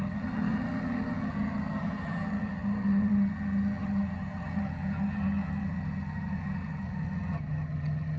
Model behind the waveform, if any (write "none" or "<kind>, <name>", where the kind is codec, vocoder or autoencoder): vocoder, HiFi-GAN